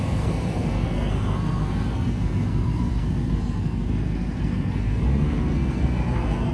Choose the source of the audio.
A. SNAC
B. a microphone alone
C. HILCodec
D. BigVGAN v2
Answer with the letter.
A